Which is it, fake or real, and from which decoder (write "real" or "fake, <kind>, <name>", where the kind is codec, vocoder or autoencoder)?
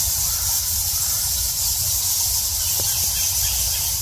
real